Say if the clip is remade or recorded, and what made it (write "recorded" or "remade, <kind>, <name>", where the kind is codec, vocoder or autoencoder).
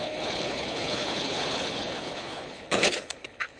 remade, codec, HILCodec